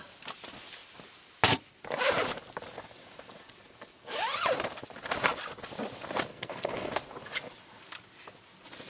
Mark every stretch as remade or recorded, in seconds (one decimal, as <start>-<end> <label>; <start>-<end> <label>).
0.0-6.3 recorded; 6.3-6.9 remade; 6.9-8.9 recorded